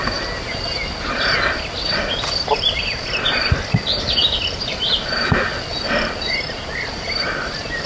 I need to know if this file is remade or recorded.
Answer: recorded